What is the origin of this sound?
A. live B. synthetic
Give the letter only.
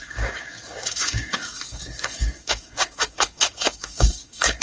B